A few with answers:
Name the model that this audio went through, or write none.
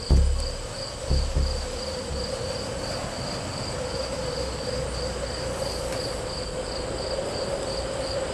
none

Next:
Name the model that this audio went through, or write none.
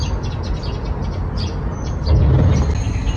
none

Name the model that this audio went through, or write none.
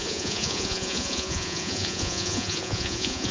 vocoder, Vocos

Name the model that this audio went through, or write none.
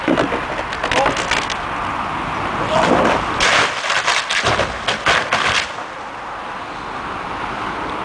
none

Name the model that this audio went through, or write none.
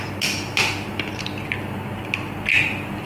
none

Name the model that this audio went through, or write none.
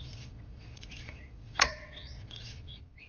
vocoder, Vocos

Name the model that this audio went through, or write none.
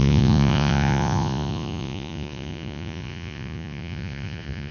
vocoder, Vocos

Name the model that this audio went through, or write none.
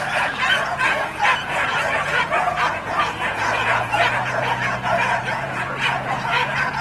vocoder, Vocos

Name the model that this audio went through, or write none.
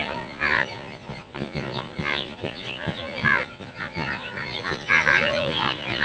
vocoder, Vocos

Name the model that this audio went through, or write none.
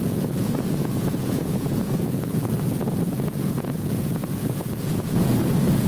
vocoder, Vocos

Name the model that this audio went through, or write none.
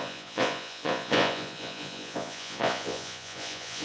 vocoder, Vocos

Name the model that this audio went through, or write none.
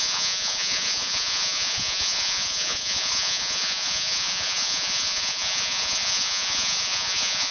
vocoder, Vocos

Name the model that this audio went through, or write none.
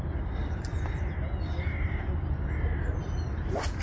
none